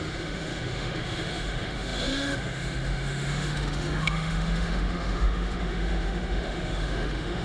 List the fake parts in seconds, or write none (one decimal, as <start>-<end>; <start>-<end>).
0.0-7.4

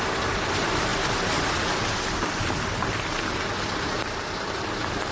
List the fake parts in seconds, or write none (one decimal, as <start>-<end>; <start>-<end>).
none

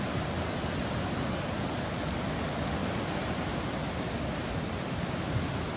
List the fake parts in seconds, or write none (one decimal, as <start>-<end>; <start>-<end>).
none